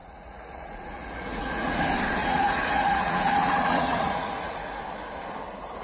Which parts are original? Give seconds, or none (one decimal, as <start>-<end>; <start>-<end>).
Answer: 1.8-2.2; 4.8-5.8